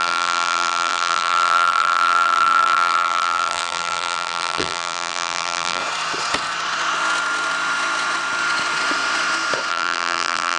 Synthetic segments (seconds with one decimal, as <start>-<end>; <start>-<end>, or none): 0.0-5.8; 9.7-10.6